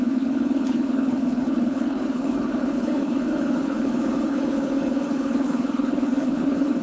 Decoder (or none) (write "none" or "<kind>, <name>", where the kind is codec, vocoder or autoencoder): codec, HILCodec